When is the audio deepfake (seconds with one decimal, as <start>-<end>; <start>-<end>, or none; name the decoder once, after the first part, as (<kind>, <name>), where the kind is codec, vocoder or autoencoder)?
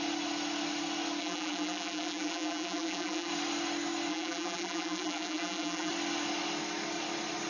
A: 1.2-3.3 (vocoder, BigVGAN v2); 4.1-5.9